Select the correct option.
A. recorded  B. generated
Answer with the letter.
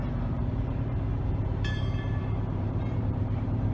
B